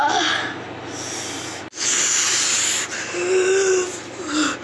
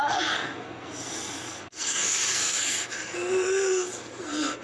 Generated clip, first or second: second